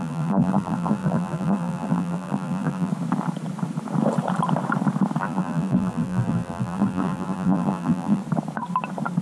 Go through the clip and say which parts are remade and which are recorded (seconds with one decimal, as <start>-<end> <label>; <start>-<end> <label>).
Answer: 0.0-2.9 remade; 2.9-5.2 recorded; 5.2-8.2 remade; 8.2-9.2 recorded